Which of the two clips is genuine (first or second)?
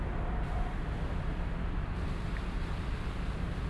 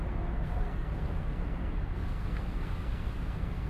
first